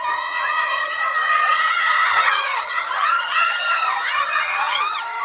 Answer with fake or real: fake